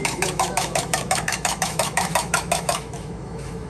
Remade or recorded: remade